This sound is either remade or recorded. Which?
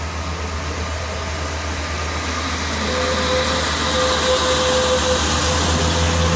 recorded